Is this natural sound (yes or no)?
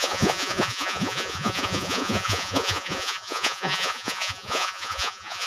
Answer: no